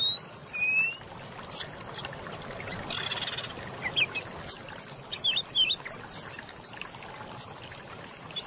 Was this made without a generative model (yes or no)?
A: yes